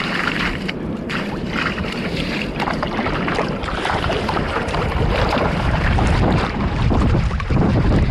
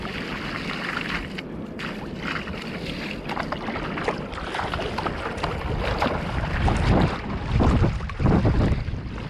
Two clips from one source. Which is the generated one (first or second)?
first